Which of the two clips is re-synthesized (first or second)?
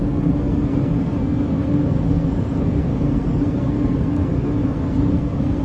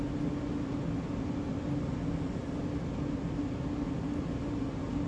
first